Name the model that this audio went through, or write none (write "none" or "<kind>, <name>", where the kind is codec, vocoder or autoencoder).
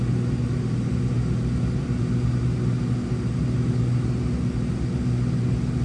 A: none